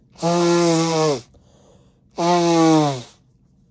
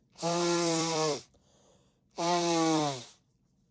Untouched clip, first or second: first